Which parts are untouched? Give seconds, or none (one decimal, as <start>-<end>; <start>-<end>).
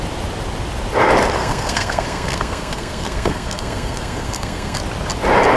0.0-1.4; 4.8-5.6